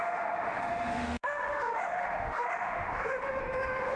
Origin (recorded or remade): remade